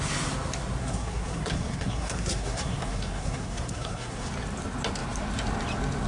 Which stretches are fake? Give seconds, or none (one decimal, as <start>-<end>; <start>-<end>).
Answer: 0.8-4.3